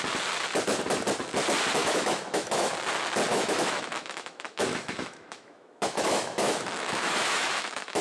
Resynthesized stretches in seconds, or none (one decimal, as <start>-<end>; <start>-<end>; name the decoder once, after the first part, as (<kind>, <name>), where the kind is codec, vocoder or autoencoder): 1.8-2.7 (autoencoder, DAC-VAE); 3.3-8.0